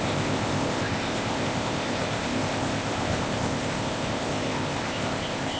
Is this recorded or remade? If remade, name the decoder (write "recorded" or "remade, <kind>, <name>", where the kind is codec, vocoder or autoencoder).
remade, codec, ZipCodec